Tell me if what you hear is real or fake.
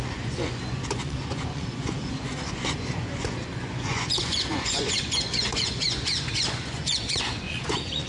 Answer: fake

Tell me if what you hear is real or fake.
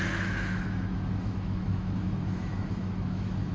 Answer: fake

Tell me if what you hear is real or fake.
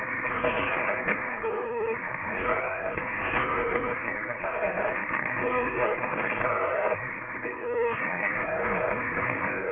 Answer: fake